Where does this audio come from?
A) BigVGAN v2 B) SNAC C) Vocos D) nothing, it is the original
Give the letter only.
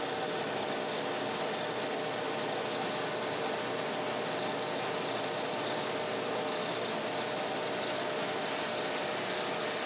D